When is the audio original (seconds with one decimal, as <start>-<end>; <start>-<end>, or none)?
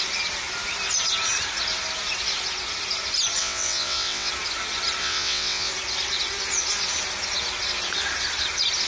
0.0-3.4; 4.3-5.0; 5.7-8.9